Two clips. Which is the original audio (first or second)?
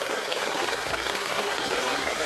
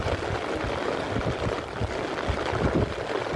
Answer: second